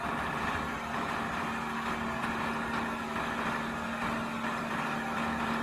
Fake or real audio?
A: real